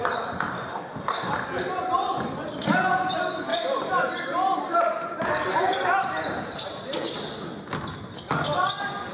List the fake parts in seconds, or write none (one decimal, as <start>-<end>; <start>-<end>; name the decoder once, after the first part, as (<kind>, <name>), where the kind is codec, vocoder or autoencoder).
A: 0.7-1.3 (codec, DAC)